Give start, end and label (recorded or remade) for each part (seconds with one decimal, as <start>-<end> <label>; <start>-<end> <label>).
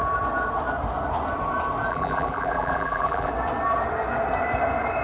0.0-1.9 recorded; 1.9-3.3 remade; 3.3-5.0 recorded